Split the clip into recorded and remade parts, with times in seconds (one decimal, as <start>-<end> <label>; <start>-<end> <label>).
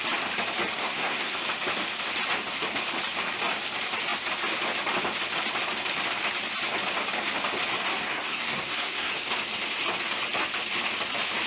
0.0-0.8 recorded; 0.8-1.4 remade; 1.4-7.9 recorded; 7.9-9.1 remade; 9.1-11.5 recorded